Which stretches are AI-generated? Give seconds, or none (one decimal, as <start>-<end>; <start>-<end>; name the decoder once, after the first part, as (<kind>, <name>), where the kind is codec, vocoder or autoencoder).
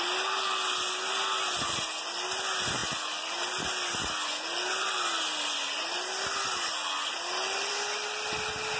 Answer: none